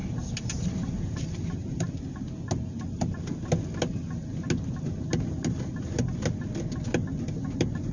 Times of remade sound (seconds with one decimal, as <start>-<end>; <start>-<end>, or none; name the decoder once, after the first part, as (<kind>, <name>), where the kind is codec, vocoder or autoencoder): 5.1-6.0 (vocoder, BigVGAN v2)